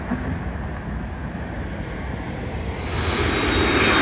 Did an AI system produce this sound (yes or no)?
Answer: no